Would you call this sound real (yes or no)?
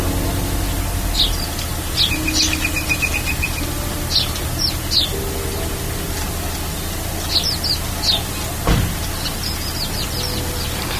yes